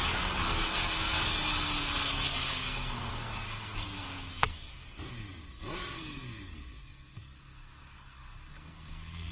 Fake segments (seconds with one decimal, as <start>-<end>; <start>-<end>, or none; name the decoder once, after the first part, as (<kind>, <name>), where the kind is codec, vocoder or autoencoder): 0.0-9.3 (codec, SNAC)